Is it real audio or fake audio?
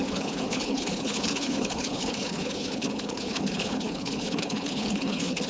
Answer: fake